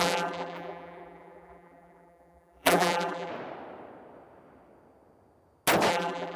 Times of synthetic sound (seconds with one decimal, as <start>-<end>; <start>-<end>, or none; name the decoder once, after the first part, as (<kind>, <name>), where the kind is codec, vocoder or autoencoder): 0.0-3.3 (vocoder, BigVGAN v2); 5.9-6.4